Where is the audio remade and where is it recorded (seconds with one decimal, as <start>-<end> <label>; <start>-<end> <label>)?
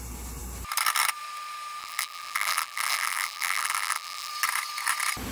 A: 0.0-1.8 recorded; 1.8-4.3 remade; 4.3-5.3 recorded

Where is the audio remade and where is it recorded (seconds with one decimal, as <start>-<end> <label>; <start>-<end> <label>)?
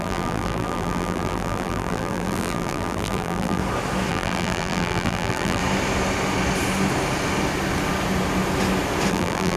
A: 0.0-3.6 remade; 3.6-4.1 recorded; 4.1-5.6 remade; 5.6-9.1 recorded; 9.1-9.6 remade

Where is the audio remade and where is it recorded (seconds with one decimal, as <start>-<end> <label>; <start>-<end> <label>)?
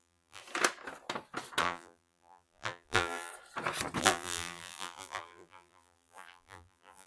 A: 0.0-0.4 remade; 0.4-1.6 recorded; 1.6-3.3 remade; 3.3-4.0 recorded; 4.0-7.1 remade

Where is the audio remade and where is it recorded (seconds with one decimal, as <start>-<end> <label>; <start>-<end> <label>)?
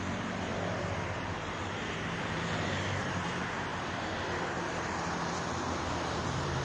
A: 0.0-3.7 remade; 3.7-5.9 recorded; 5.9-6.6 remade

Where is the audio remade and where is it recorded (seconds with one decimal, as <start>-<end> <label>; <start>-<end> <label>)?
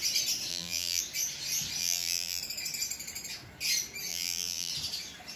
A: 0.0-0.5 recorded; 0.5-1.0 remade; 1.0-1.8 recorded; 1.8-2.4 remade; 2.4-4.1 recorded; 4.1-4.7 remade; 4.7-5.4 recorded